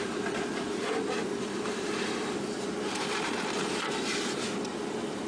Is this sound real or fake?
fake